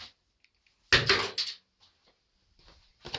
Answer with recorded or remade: recorded